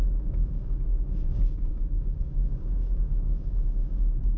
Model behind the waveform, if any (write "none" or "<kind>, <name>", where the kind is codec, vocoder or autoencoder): codec, DAC